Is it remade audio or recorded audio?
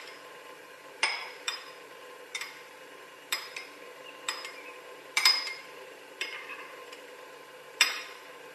remade